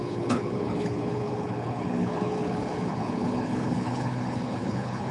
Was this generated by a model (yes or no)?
yes